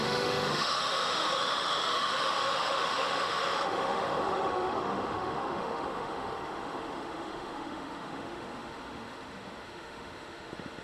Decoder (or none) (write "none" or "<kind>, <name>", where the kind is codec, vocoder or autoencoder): autoencoder, DAC-VAE